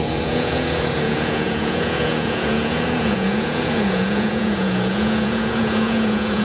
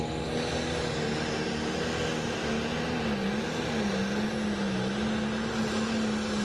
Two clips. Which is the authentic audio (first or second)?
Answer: second